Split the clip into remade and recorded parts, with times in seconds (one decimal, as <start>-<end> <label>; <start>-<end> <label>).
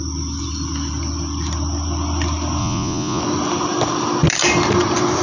0.0-2.6 recorded; 2.6-3.2 remade; 3.2-5.2 recorded